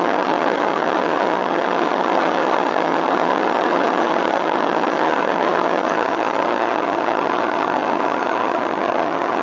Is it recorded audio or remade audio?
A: remade